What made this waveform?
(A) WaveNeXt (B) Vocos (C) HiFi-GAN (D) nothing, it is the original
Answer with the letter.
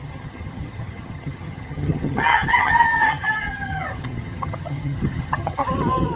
C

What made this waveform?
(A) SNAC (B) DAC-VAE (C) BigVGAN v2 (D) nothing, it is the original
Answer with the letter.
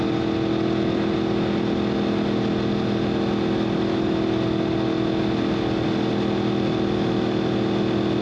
D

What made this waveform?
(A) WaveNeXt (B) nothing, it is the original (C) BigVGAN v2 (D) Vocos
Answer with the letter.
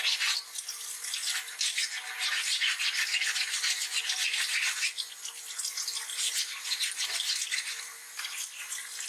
B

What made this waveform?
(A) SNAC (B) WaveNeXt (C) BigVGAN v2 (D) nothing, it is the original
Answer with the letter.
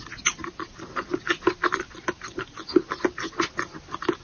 D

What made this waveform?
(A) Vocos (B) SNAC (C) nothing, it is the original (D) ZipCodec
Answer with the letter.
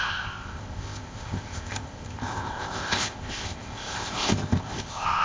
D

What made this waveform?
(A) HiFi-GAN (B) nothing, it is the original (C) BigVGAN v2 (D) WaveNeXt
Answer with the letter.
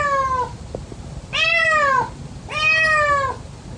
B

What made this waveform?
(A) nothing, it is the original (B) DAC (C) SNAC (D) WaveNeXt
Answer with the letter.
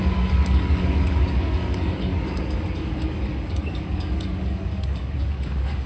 B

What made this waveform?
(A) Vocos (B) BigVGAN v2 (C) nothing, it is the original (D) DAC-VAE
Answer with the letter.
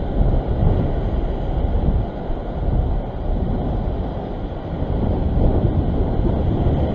C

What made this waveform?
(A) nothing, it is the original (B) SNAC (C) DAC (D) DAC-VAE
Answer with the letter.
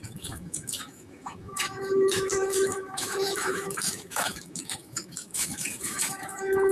D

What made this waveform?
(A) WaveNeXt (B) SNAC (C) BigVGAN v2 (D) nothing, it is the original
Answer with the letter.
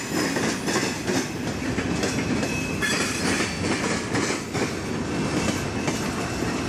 D